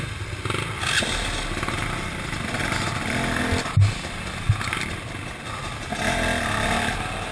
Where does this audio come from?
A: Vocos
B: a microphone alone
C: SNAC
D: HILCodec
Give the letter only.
B